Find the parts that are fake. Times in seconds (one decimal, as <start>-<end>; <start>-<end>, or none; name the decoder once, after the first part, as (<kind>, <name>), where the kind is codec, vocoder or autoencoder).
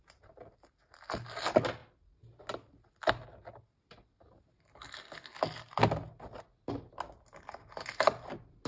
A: none